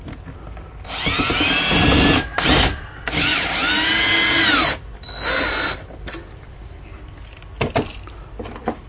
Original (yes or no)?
yes